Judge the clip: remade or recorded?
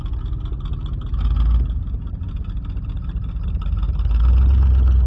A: recorded